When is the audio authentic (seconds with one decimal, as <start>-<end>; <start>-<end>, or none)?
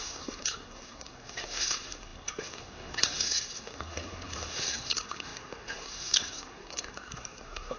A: none